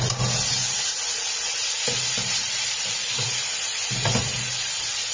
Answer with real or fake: real